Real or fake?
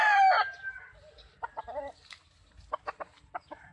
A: real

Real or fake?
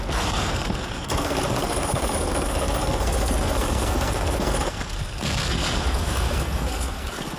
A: fake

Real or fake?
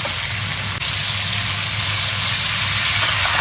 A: real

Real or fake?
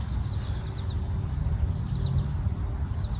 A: real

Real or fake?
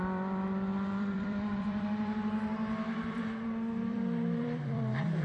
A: fake